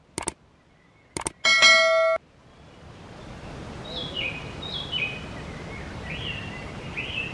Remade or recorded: recorded